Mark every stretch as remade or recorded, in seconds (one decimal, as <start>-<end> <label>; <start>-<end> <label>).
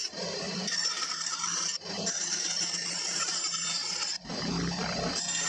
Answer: 0.0-3.3 remade; 3.3-5.5 recorded